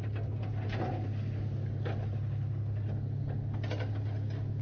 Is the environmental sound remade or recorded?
recorded